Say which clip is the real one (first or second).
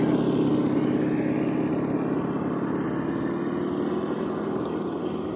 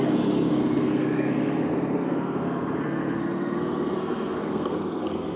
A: first